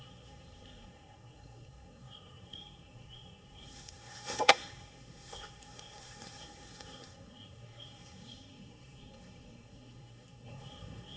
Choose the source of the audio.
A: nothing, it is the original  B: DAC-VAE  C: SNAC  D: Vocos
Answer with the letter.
C